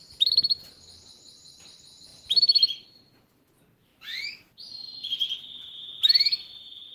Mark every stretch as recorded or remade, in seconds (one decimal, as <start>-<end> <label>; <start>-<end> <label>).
0.0-2.1 recorded; 2.1-3.5 remade; 3.5-3.9 recorded; 3.9-4.7 remade; 4.7-6.9 recorded